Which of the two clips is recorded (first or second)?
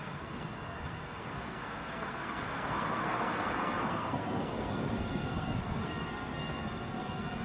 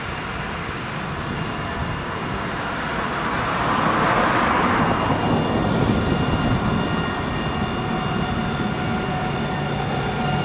second